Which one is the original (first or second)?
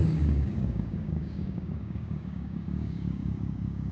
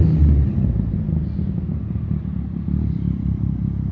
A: second